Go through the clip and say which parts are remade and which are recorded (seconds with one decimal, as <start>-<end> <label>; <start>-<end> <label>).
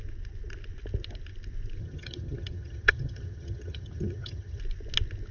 0.0-1.8 recorded; 1.8-4.6 remade; 4.6-5.3 recorded